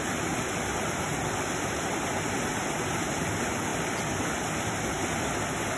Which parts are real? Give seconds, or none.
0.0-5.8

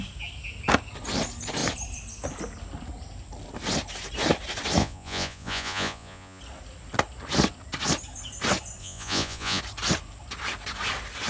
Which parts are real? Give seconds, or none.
0.0-4.8; 6.4-8.8; 9.6-11.3

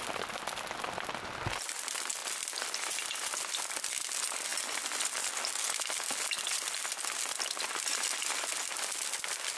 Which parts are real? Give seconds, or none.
0.0-9.6